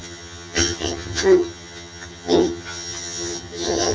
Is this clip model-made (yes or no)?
yes